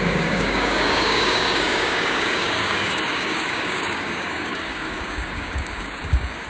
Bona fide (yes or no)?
no